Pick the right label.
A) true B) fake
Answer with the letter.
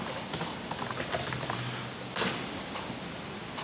B